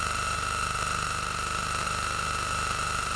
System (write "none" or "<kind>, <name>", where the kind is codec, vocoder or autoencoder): none